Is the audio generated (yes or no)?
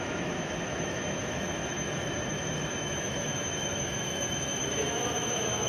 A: yes